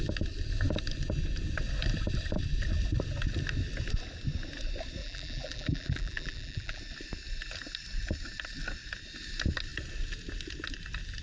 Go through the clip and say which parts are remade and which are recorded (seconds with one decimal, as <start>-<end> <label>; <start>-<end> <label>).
0.0-5.0 recorded; 5.0-6.8 remade; 6.8-11.2 recorded